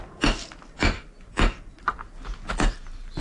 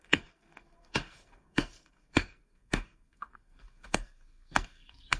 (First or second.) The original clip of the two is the first